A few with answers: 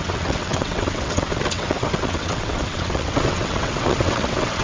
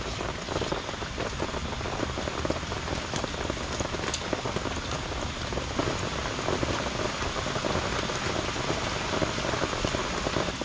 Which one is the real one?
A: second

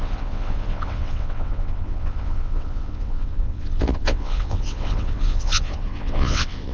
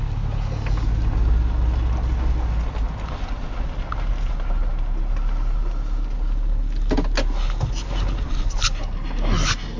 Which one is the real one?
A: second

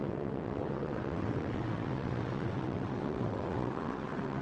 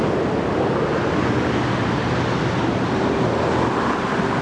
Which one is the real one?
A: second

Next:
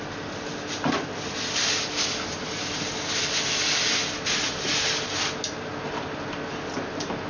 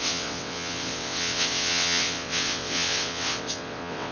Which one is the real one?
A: first